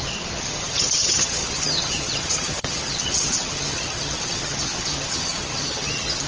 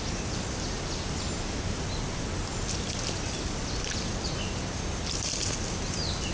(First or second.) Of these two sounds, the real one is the second